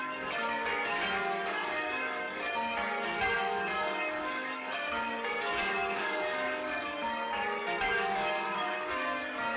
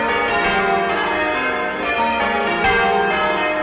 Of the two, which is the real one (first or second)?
second